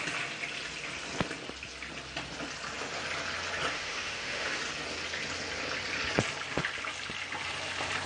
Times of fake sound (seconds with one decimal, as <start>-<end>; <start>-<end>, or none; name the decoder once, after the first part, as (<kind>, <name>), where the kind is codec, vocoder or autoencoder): 3.7-4.6 (autoencoder, DAC-VAE)